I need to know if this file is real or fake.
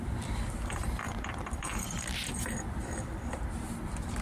fake